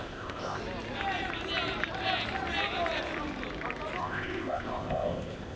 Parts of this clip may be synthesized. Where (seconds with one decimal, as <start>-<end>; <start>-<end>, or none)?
0.0-0.6; 4.0-5.6